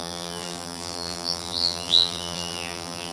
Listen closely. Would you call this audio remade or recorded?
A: remade